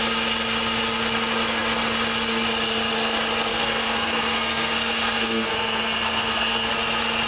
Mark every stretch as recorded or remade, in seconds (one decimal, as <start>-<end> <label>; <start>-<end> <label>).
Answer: 0.0-3.5 recorded; 3.5-6.7 remade; 6.7-7.3 recorded